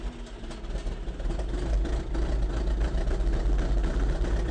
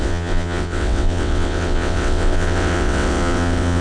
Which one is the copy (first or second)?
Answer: second